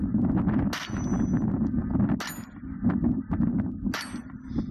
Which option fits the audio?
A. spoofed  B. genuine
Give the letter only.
B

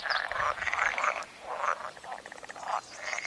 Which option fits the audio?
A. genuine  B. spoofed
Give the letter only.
A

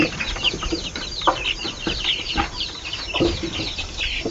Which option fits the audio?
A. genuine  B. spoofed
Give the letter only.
B